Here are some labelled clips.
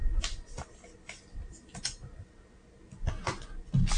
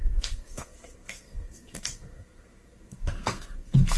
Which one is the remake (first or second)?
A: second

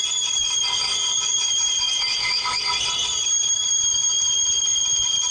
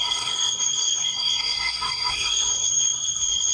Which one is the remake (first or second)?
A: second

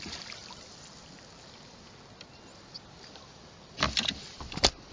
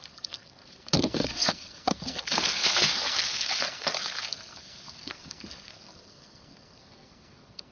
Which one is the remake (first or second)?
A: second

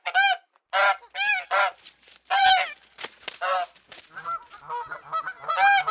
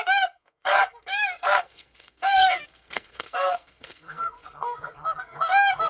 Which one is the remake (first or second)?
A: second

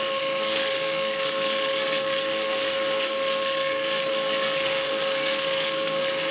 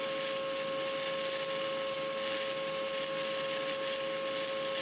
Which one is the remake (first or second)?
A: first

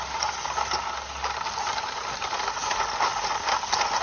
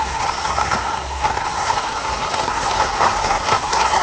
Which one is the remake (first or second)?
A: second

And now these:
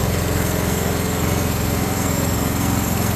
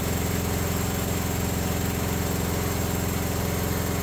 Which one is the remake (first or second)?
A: first